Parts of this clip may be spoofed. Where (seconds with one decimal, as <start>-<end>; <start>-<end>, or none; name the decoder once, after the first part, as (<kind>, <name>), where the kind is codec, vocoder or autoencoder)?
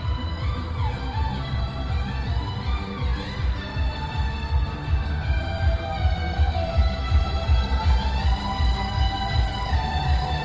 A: none